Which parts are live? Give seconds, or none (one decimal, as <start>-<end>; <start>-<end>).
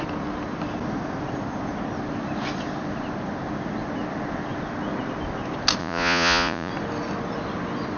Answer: 0.0-5.8; 6.7-8.0